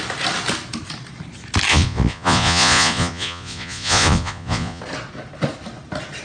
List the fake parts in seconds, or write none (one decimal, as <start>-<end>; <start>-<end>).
1.7-4.8